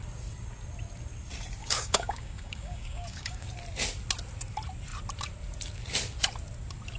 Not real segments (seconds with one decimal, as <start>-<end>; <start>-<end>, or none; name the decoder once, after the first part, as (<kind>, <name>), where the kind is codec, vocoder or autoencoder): 1.6-3.5 (codec, DAC)